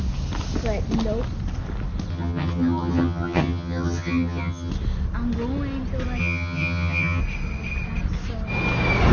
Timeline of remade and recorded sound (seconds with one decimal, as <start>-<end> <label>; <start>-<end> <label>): 0.0-2.1 recorded; 2.1-4.7 remade; 4.7-6.2 recorded; 6.2-7.2 remade; 7.2-9.1 recorded